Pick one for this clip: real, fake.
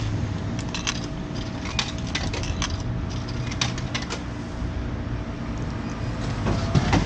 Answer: real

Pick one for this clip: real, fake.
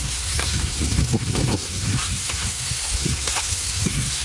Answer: fake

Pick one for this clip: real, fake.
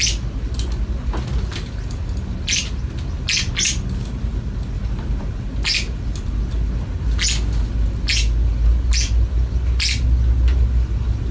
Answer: real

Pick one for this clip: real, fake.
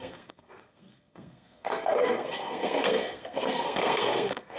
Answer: fake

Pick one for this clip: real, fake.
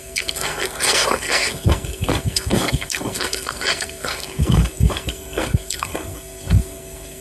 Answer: fake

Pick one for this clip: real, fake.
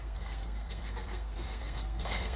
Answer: fake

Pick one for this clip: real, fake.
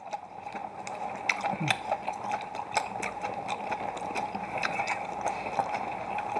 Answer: real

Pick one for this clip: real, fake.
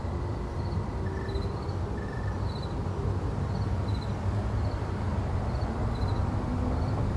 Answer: real